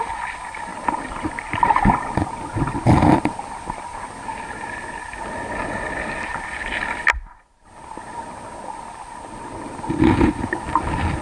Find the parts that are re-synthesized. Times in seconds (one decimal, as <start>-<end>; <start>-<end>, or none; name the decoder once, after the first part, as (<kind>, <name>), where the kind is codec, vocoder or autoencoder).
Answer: none